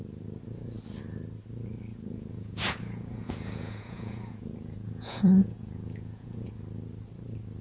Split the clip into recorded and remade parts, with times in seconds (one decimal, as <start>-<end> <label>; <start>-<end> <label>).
0.0-1.9 recorded; 1.9-6.5 remade; 6.5-7.6 recorded